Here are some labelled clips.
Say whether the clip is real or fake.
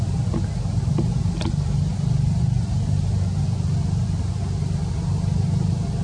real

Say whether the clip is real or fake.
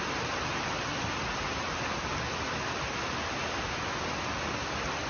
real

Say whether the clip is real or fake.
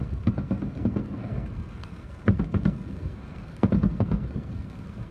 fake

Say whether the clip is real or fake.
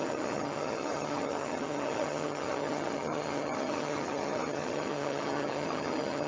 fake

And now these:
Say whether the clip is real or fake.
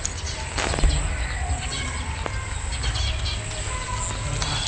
real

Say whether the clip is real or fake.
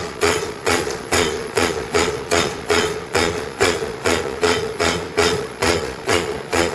fake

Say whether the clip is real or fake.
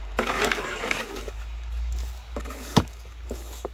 fake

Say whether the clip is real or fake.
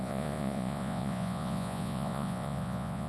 fake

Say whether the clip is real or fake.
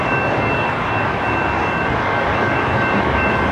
fake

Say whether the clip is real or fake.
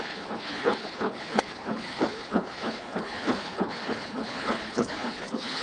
fake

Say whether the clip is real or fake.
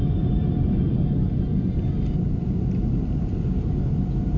real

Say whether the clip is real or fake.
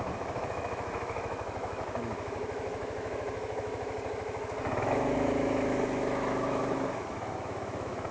fake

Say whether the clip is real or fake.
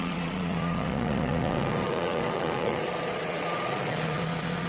fake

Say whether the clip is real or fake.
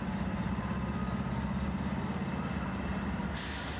real